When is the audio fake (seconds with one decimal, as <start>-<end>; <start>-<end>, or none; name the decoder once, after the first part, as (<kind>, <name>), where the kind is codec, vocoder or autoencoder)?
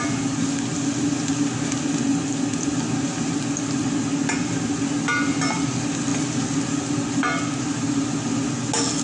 none